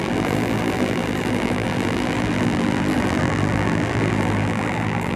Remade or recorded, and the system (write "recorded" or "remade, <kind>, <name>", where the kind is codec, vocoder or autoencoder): remade, vocoder, BigVGAN v2